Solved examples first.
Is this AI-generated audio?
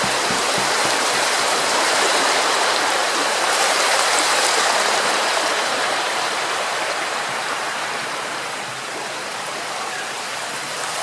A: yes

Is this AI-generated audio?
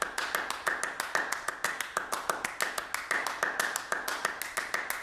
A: no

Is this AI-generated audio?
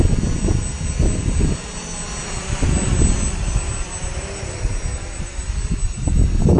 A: no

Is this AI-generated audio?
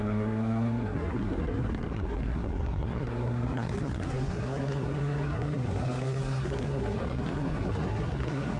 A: yes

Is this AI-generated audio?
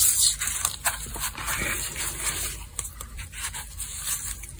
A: yes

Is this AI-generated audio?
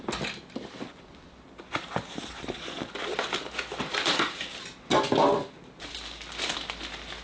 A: no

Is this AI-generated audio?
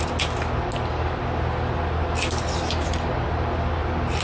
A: no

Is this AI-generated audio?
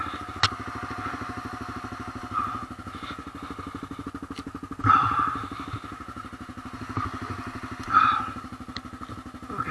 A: no